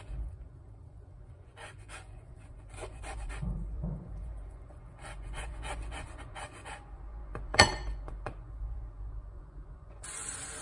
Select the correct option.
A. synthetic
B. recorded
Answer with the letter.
A